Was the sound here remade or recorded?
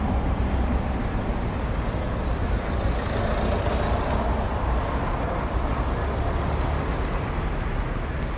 recorded